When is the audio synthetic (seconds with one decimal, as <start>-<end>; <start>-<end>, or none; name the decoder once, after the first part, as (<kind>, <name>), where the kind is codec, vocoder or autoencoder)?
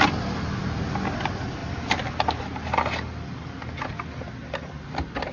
1.6-2.4 (vocoder, BigVGAN v2)